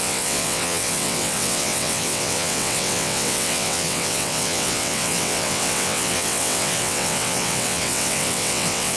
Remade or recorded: remade